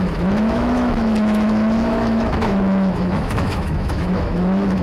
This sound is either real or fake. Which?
fake